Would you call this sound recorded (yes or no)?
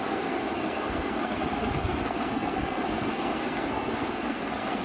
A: no